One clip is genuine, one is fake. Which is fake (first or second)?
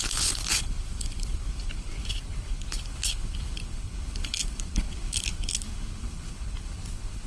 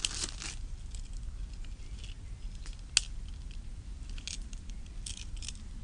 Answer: first